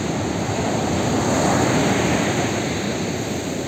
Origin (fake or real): real